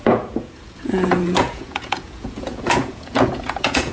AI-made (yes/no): yes